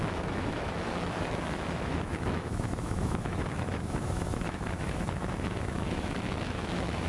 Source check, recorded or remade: remade